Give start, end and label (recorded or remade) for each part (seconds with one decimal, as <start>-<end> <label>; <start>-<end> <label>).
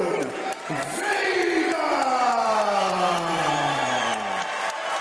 0.0-5.0 remade